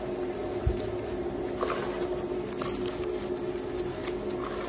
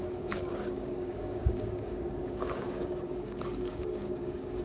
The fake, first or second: second